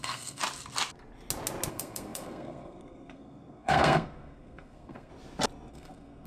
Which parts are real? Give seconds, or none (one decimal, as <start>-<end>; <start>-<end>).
0.4-1.7; 5.1-5.7